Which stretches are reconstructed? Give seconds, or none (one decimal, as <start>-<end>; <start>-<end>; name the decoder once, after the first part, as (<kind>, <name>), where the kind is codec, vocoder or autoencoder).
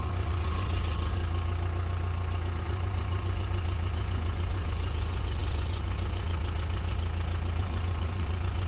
0.0-1.2 (vocoder, Vocos); 2.6-7.0; 7.6-8.7